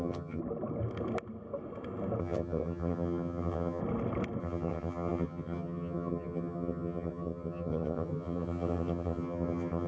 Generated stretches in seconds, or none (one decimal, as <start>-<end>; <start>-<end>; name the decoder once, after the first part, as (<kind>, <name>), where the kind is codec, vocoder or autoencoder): 0.0-0.4 (vocoder, HiFi-GAN); 2.2-3.8; 4.4-9.9